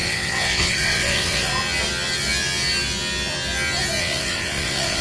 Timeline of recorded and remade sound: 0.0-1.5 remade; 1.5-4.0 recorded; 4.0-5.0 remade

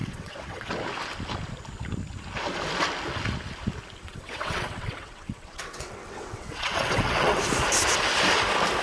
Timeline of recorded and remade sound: 0.0-0.7 remade; 0.7-4.0 recorded; 4.0-7.4 remade; 7.4-8.8 recorded